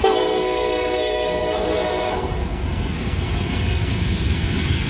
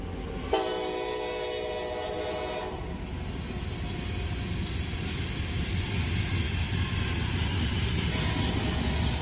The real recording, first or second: second